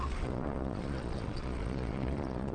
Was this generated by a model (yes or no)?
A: yes